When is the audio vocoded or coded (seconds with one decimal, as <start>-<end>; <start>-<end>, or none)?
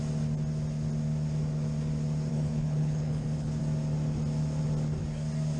2.3-3.6